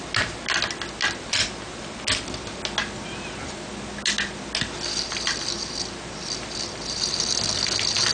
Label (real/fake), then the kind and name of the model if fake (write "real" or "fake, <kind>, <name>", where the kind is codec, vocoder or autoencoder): real